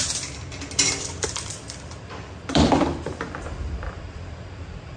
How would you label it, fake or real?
fake